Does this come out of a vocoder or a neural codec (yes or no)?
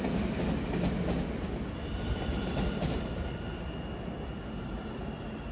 no